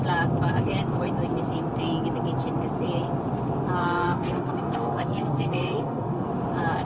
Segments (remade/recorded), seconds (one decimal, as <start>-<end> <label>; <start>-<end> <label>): 0.0-3.8 recorded; 3.8-6.3 remade; 6.3-6.8 recorded